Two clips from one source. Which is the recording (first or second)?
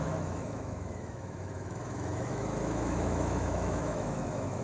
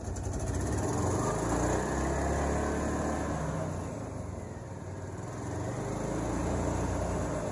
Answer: second